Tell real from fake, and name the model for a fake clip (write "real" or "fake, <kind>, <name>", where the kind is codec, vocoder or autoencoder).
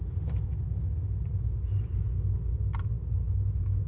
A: real